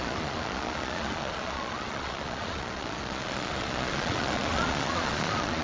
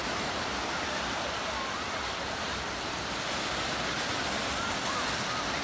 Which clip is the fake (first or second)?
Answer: first